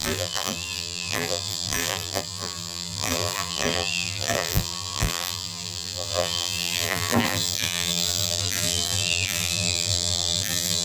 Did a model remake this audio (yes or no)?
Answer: yes